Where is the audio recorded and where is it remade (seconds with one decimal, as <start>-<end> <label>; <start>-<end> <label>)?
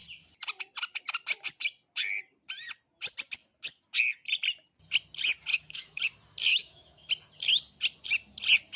0.0-5.5 recorded; 5.5-6.0 remade; 6.0-6.5 recorded; 6.5-7.1 remade; 7.1-8.8 recorded